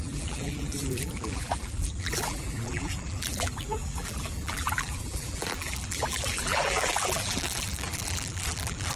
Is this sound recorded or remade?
remade